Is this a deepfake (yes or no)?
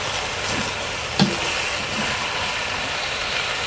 no